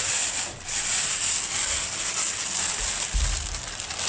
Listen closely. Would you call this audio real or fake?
real